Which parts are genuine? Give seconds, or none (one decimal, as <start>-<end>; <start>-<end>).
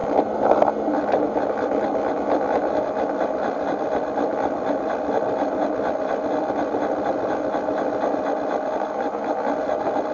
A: 0.0-4.3; 5.6-10.1